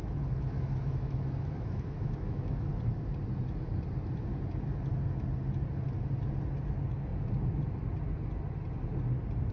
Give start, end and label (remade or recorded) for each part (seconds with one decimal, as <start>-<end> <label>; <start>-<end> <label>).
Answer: 0.0-2.7 remade; 2.7-9.5 recorded